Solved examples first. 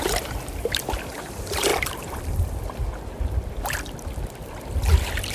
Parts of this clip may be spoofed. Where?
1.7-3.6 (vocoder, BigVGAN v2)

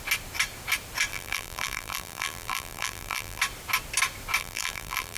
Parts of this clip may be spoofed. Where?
1.1-3.4 (vocoder, BigVGAN v2); 4.4-5.2